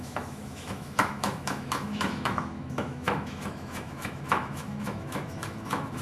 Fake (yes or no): yes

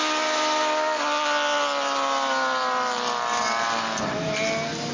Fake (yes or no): no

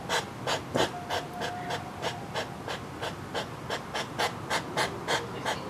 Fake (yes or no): no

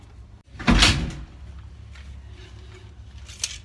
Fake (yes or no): no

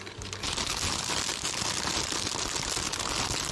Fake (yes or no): no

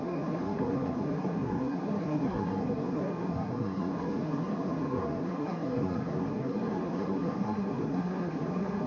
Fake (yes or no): yes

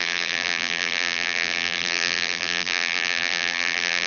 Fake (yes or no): yes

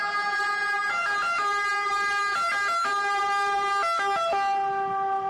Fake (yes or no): no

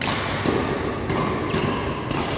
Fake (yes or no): no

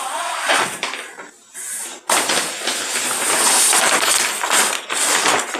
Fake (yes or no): no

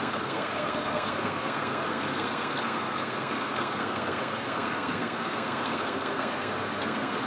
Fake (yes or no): yes